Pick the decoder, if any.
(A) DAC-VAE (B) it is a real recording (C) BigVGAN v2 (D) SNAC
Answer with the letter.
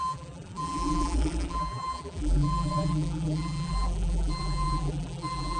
C